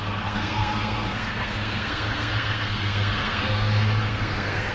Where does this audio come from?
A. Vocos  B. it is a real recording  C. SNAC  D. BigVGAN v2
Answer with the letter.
C